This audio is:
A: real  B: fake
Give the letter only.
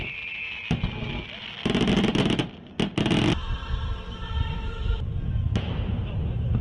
A